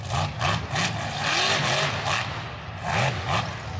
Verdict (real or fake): real